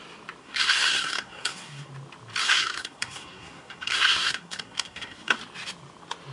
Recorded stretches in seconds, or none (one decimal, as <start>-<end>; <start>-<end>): 0.0-0.4; 1.9-2.4; 5.4-6.3